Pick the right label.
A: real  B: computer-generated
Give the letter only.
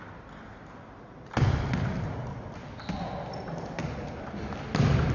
A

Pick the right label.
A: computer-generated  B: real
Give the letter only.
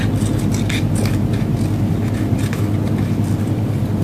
B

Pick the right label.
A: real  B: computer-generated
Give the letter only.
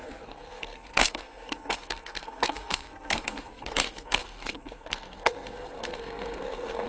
B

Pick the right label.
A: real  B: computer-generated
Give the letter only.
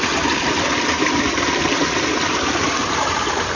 A